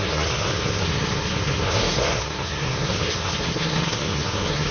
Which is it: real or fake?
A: fake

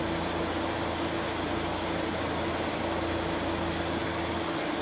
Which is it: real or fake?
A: real